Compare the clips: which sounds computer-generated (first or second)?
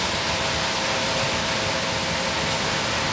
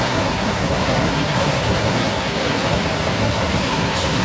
second